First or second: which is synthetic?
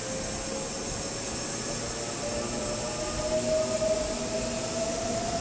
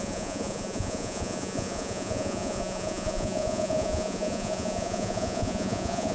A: second